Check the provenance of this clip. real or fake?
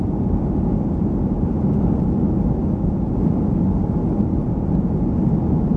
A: real